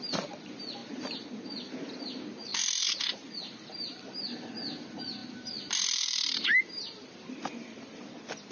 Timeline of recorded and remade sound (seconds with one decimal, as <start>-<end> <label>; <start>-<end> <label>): 0.0-2.5 recorded; 2.5-4.5 remade; 4.5-5.2 recorded; 5.2-8.0 remade; 8.0-8.5 recorded